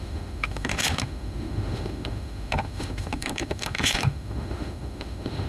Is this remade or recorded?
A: remade